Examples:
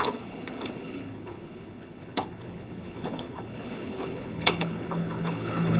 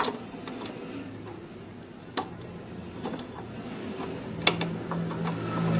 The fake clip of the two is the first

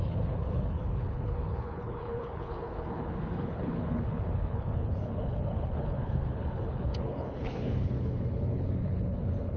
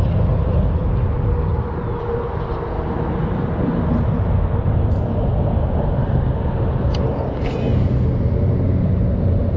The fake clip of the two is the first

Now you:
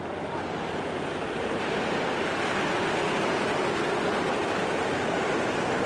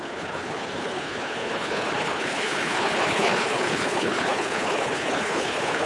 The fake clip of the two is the second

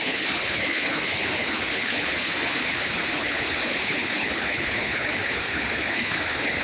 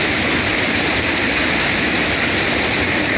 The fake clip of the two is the first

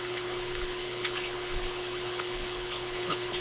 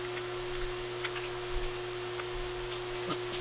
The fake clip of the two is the first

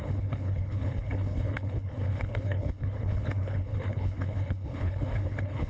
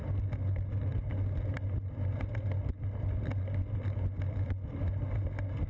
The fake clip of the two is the first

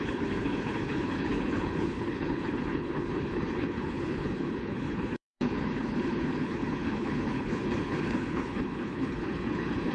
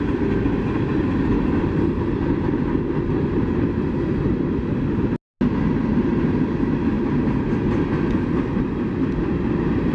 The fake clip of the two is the first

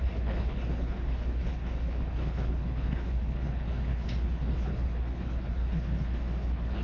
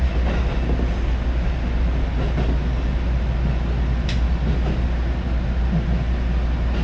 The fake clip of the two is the first